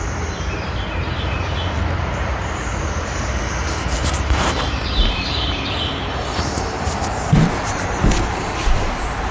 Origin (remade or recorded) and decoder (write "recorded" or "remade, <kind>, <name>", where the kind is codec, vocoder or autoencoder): remade, vocoder, BigVGAN v2